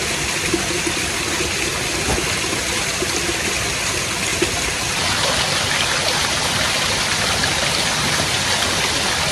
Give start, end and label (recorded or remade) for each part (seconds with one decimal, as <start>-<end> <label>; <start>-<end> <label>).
0.0-9.3 recorded